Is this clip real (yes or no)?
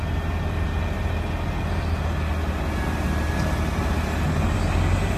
yes